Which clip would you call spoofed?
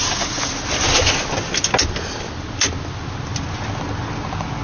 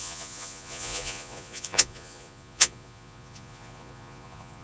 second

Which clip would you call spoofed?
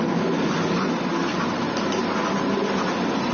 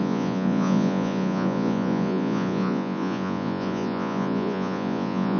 second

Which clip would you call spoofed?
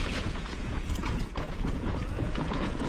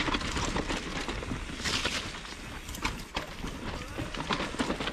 first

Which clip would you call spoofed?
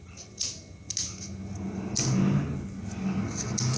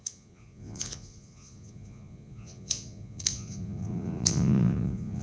second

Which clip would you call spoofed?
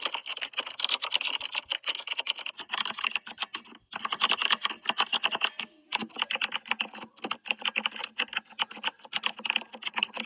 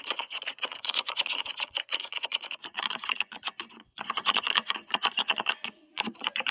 second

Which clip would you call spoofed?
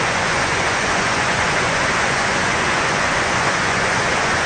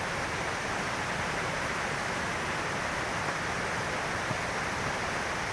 first